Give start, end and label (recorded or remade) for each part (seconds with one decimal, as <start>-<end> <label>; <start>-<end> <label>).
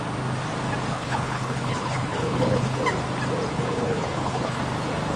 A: 0.0-0.9 recorded; 0.9-2.8 remade; 2.8-3.5 recorded; 3.5-4.6 remade; 4.6-5.2 recorded